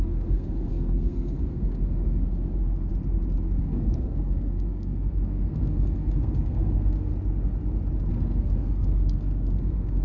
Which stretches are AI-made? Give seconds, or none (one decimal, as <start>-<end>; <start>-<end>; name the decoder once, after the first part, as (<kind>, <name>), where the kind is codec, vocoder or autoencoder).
0.0-2.9 (codec, SNAC); 3.6-7.1; 8.1-10.0